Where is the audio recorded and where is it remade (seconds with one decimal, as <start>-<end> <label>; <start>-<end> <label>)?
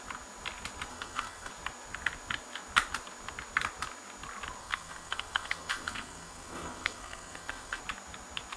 0.0-0.9 recorded; 0.9-1.5 remade; 1.5-4.6 recorded; 4.6-7.8 remade; 7.8-8.6 recorded